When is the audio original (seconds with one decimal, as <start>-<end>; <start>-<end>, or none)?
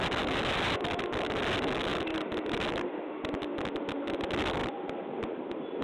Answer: 0.0-5.8